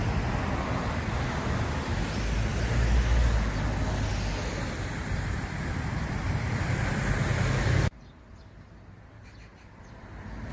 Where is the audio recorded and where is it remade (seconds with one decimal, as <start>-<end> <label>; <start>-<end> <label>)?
0.0-5.0 recorded; 5.0-8.3 remade; 8.3-9.5 recorded; 9.5-10.5 remade